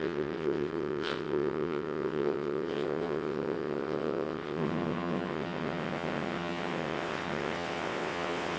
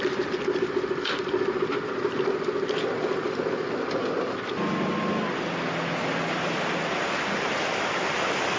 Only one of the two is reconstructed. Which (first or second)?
first